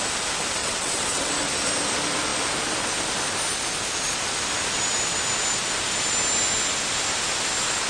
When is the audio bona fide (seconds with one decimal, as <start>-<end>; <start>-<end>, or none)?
0.0-0.6; 1.3-7.9